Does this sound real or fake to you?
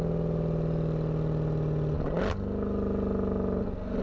real